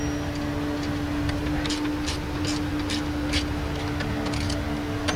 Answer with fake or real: real